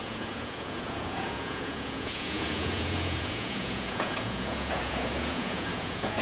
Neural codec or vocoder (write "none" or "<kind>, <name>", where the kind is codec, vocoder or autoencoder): vocoder, Vocos